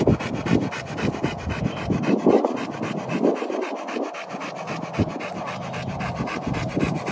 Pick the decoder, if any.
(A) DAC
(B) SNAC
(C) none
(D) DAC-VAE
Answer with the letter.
C